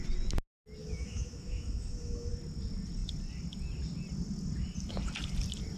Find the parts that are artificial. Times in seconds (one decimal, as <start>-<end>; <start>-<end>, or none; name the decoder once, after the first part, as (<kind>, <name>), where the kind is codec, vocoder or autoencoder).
0.8-2.3 (autoencoder, DAC-VAE)